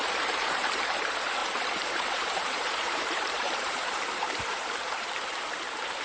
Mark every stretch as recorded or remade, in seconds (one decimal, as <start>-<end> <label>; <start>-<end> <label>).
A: 0.0-6.0 remade